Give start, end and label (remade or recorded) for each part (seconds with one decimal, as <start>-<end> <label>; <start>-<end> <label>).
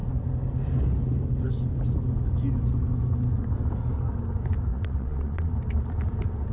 0.0-4.7 recorded; 4.7-5.5 remade; 5.5-6.5 recorded